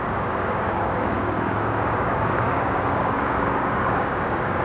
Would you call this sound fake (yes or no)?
yes